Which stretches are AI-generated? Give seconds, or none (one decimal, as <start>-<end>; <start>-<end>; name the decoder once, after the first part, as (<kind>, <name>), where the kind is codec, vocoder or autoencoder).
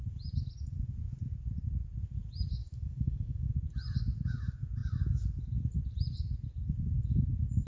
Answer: 2.6-3.5 (codec, DAC)